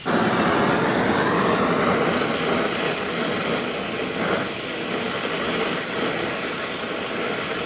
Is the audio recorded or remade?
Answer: recorded